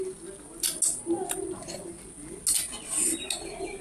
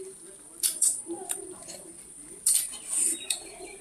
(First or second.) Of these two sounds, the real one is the first